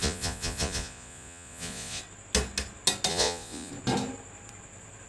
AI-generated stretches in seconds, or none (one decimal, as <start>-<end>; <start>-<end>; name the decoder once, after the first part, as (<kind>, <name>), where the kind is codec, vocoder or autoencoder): 0.0-2.0 (vocoder, Vocos); 3.1-3.7